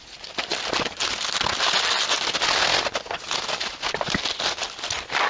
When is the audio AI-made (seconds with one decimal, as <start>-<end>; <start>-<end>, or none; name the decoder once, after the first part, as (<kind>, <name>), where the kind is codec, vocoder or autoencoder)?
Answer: none